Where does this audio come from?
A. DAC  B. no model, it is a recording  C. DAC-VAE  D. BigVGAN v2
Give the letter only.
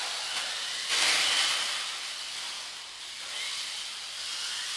B